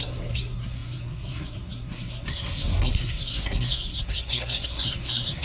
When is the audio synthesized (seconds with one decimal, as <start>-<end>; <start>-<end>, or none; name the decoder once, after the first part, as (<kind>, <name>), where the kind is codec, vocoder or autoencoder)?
0.0-5.4 (codec, SNAC)